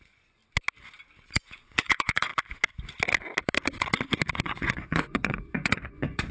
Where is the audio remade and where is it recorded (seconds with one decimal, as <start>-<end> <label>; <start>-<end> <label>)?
0.0-0.4 remade; 0.4-1.3 recorded; 1.3-2.3 remade; 2.3-4.4 recorded; 4.4-6.3 remade